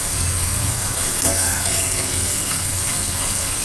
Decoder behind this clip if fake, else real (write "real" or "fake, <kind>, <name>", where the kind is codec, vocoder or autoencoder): fake, codec, SNAC